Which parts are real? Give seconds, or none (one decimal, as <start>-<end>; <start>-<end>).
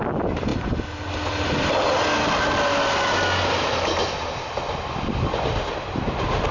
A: 0.0-6.5